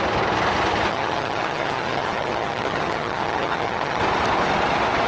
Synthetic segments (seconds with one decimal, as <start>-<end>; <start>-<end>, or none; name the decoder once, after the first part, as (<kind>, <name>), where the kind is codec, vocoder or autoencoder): 0.9-4.0 (vocoder, HiFi-GAN)